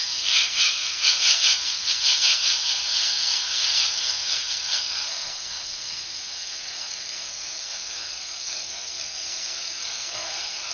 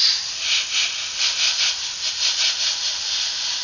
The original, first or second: second